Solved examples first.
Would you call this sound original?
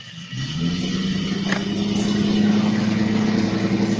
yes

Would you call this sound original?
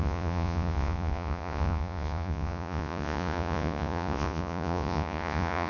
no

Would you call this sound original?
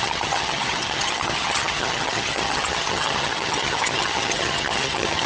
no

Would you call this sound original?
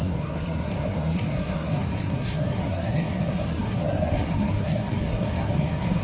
no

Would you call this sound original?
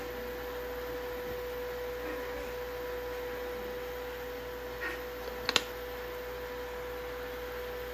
yes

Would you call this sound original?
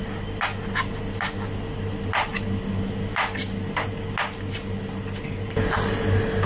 yes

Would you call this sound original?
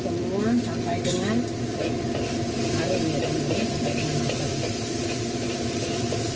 yes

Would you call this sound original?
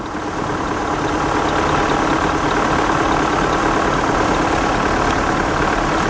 yes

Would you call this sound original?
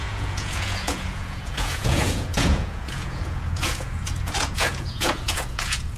no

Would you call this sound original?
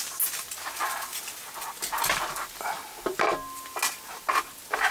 yes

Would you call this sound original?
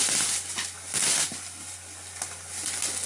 yes